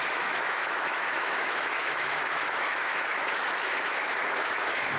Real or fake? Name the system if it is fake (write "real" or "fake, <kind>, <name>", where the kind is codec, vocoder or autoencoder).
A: fake, autoencoder, DAC-VAE